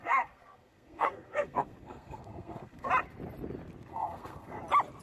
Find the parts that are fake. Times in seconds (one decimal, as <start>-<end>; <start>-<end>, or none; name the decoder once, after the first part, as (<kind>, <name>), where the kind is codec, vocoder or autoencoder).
0.0-2.9 (codec, SNAC); 3.9-4.6